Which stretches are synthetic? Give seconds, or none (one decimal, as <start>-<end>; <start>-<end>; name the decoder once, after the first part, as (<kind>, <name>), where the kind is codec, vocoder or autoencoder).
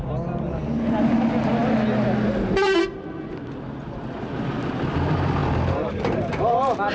none